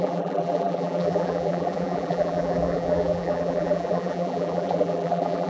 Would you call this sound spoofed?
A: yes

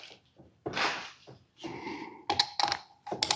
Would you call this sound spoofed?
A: no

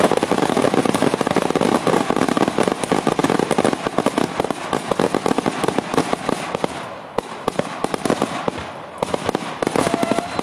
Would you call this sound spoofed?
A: yes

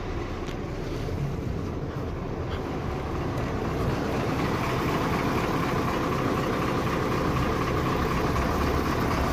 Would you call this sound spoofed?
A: no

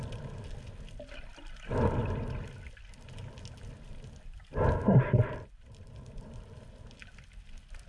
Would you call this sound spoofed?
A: no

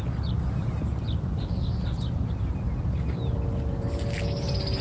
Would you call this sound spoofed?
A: no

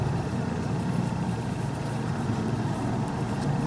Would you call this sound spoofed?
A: yes